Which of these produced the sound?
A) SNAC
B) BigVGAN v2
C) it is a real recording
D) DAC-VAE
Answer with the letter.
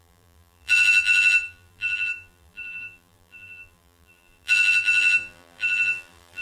B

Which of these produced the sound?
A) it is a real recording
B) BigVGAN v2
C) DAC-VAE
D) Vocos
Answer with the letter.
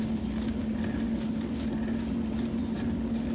A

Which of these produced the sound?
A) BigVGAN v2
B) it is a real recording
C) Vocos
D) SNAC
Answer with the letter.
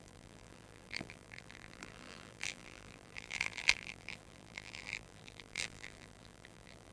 A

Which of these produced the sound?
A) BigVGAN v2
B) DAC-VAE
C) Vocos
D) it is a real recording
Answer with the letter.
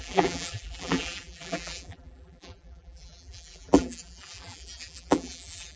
A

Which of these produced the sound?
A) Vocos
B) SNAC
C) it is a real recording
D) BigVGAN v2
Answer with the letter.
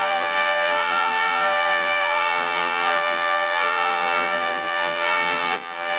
D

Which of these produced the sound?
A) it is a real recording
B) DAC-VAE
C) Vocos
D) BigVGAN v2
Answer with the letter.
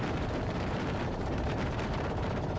D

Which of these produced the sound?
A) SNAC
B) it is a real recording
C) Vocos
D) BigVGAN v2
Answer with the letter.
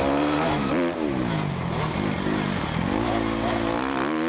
B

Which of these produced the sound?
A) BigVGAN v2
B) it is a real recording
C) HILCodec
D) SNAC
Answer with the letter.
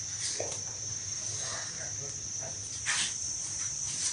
A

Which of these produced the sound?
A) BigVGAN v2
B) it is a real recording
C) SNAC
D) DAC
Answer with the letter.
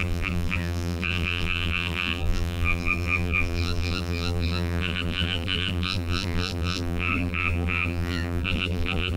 A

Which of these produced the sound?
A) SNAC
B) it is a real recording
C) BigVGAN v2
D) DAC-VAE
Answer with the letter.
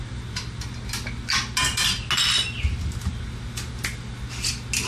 B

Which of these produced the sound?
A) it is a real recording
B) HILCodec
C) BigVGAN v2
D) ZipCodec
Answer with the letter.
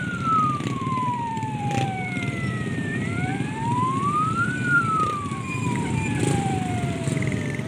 C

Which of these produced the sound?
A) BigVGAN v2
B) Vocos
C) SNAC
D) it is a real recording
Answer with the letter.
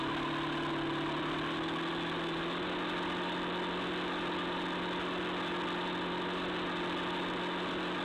D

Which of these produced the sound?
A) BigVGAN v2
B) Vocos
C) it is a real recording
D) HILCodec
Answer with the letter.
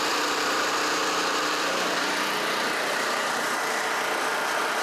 A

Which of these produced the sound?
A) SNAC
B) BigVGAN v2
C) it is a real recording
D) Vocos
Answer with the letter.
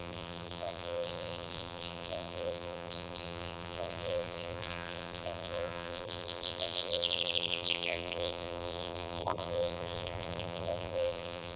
B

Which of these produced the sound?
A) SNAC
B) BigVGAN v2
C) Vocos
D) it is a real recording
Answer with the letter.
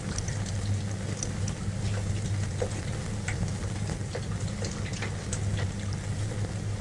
D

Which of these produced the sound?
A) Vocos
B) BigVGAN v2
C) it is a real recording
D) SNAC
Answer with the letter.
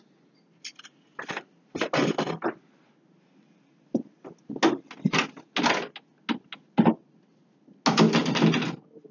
C